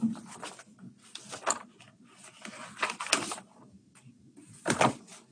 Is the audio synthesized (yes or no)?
no